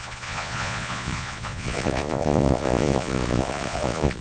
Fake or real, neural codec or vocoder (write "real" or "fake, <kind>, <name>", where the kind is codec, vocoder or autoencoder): fake, vocoder, Vocos